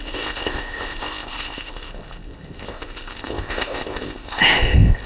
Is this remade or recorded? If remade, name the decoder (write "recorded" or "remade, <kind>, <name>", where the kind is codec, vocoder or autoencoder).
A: remade, codec, ZipCodec